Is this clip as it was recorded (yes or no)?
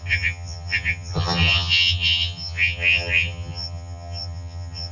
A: no